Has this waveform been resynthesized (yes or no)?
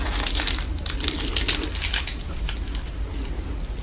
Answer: no